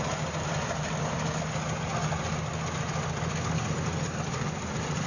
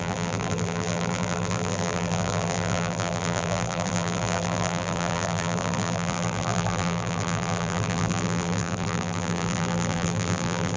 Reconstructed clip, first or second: second